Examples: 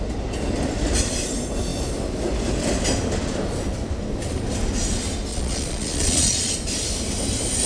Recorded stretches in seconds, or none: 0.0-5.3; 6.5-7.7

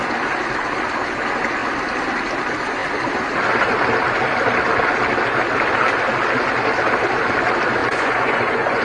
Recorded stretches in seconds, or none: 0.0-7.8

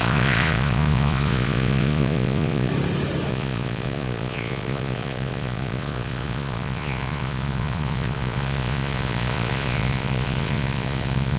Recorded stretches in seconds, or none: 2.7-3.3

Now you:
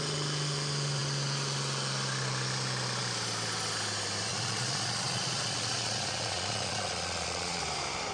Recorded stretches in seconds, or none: 0.0-4.3; 7.6-8.1